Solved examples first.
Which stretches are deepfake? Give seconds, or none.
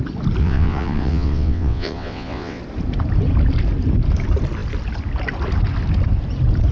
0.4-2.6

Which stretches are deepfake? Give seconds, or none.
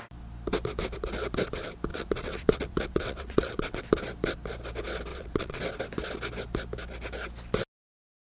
1.9-3.8; 5.1-5.6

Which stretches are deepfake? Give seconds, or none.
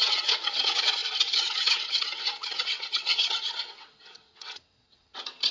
0.0-5.5